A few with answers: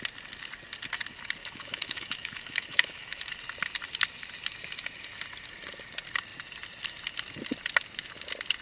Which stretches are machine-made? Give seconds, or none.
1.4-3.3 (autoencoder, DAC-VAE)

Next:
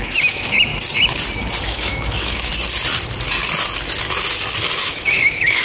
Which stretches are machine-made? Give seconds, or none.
0.0-0.7 (autoencoder, DAC-VAE); 1.6-2.5; 4.8-5.6

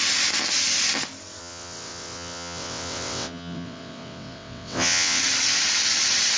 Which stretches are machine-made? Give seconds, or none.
1.4-5.2 (vocoder, WaveNeXt)

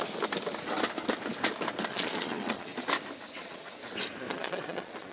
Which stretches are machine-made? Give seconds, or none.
1.9-2.7 (vocoder, Vocos); 3.4-3.8; 4.3-5.1

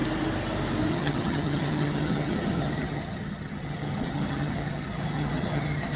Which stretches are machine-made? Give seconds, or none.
0.9-6.0 (vocoder, HiFi-GAN)

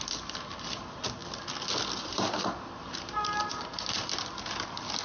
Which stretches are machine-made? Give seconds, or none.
none